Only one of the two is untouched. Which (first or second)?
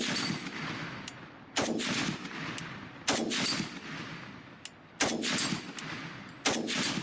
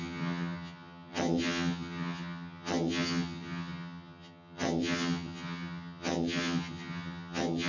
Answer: first